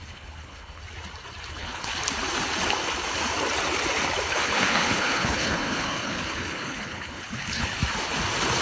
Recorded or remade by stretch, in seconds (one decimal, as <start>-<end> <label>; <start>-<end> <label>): 0.0-0.8 remade; 0.8-1.5 recorded; 1.5-1.9 remade; 1.9-4.3 recorded; 4.3-7.8 remade; 7.8-8.6 recorded